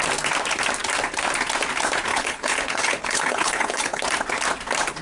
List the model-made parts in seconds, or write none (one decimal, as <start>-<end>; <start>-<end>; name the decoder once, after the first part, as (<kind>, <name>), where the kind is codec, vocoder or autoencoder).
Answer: 2.1-4.0 (codec, HILCodec)